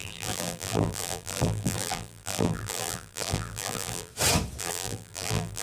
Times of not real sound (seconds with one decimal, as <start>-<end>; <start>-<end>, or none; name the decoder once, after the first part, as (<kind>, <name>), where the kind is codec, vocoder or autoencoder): 0.0-4.1 (vocoder, BigVGAN v2); 4.6-5.6